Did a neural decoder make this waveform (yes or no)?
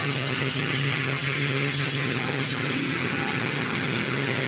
yes